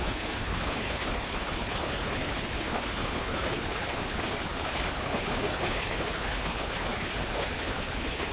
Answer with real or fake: fake